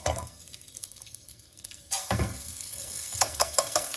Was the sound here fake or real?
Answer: fake